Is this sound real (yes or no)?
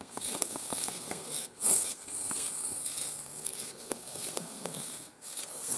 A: no